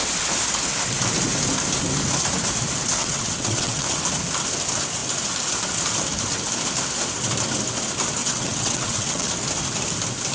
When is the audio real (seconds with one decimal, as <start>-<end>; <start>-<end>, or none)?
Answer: 0.0-3.0; 4.0-8.2; 9.3-10.3

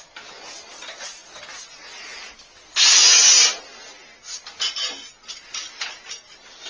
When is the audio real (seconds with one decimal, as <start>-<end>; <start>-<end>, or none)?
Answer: 0.0-6.7